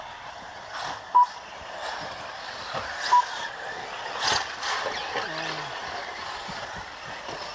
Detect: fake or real real